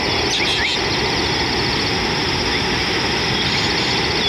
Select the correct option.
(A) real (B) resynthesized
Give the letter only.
A